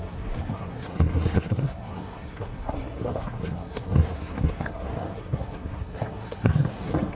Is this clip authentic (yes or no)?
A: no